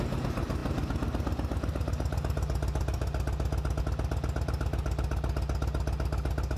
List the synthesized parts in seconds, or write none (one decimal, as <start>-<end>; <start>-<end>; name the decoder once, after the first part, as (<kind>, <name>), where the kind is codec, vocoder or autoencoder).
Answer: none